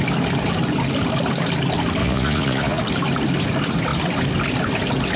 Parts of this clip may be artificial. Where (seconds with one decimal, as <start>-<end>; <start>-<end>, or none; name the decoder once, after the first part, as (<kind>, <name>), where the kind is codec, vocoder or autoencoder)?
2.0-2.8 (vocoder, Vocos)